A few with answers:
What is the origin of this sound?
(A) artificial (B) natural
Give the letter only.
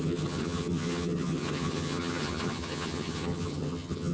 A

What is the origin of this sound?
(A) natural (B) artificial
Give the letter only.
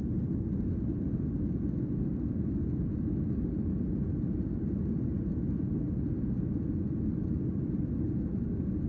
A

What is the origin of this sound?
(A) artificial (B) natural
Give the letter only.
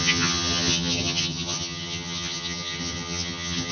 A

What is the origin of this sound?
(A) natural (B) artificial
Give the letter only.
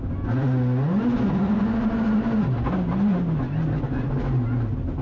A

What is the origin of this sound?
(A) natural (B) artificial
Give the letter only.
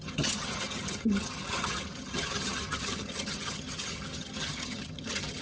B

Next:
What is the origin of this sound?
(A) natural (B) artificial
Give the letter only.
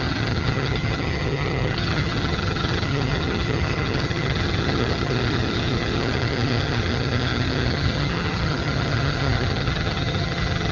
B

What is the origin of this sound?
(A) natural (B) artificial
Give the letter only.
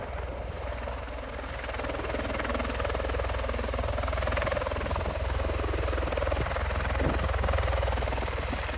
A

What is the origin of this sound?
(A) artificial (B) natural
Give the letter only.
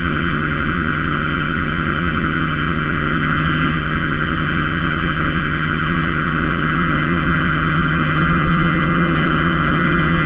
A